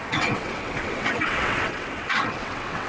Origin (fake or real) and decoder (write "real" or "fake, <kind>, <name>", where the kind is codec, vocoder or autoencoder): fake, vocoder, WaveNeXt